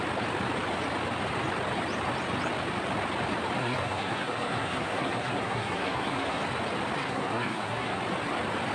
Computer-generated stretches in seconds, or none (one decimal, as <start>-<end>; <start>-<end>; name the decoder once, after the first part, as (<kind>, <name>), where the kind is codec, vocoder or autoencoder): 3.6-6.4 (codec, SNAC); 7.0-8.0